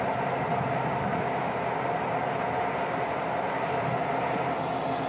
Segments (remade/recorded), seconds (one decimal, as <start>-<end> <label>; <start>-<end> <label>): 0.0-5.1 recorded